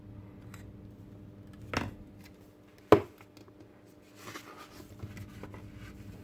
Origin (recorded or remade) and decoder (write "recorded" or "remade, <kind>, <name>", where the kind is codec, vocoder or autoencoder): recorded